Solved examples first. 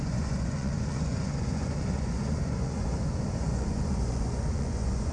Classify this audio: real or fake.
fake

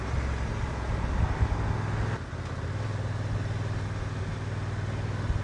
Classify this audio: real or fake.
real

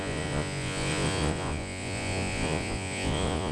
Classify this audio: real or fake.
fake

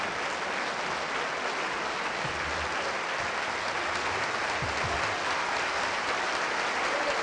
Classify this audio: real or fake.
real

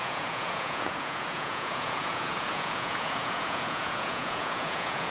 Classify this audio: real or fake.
fake